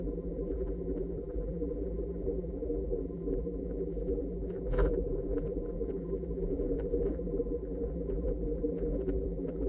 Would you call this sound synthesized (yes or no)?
yes